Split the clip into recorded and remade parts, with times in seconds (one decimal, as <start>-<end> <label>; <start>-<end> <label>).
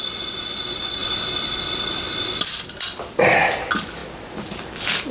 0.0-5.1 recorded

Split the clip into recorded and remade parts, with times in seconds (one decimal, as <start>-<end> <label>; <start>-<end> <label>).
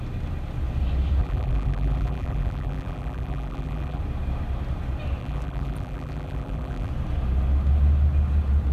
0.0-1.2 recorded; 1.2-4.0 remade; 4.0-5.2 recorded; 5.2-6.9 remade; 6.9-8.7 recorded